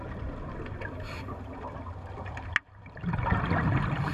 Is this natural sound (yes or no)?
yes